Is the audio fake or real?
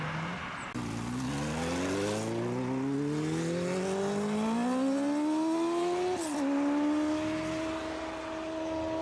real